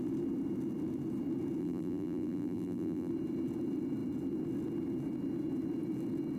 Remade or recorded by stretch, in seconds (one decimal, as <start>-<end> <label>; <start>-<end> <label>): 0.0-1.6 recorded; 1.6-3.1 remade; 3.1-6.4 recorded